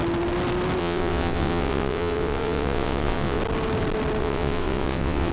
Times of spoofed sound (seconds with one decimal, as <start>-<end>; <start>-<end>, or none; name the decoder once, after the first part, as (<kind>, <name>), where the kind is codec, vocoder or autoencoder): 0.8-3.4 (vocoder, WaveNeXt); 4.2-5.3